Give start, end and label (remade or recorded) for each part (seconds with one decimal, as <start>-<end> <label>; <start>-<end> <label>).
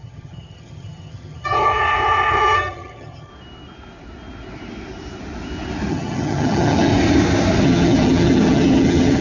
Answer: 0.0-3.3 remade; 3.3-5.9 recorded; 5.9-6.9 remade; 6.9-7.6 recorded; 7.6-9.2 remade